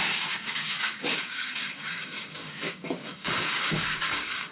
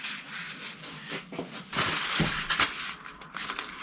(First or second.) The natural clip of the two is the second